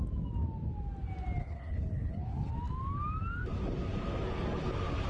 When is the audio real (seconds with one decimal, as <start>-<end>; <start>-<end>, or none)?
0.0-1.4; 2.5-5.1